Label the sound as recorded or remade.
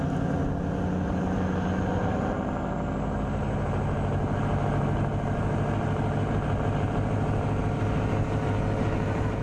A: recorded